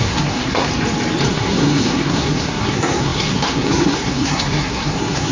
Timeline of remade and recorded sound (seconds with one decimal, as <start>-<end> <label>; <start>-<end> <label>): 0.0-0.7 remade; 0.7-1.3 recorded; 1.3-5.3 remade